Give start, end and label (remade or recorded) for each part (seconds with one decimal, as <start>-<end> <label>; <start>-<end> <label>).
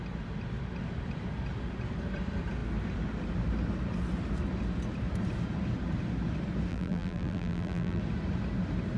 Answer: 0.0-6.7 recorded; 6.7-8.0 remade; 8.0-9.0 recorded